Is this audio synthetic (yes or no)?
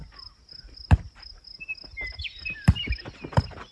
no